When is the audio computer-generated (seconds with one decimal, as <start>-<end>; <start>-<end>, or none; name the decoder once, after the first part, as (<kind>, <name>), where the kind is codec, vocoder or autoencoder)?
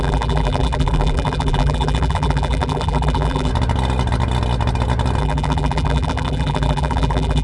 0.0-3.5 (vocoder, BigVGAN v2); 5.2-7.4